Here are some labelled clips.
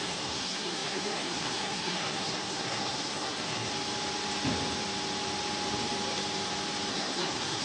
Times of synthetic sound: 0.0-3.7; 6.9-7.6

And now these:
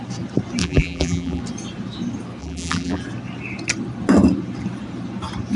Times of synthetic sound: 0.6-1.4; 2.4-3.0

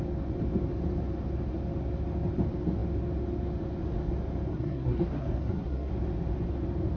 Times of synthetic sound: 4.5-5.9

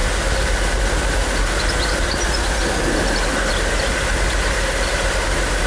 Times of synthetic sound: none

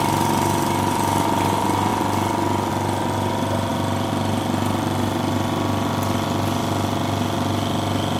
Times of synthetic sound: none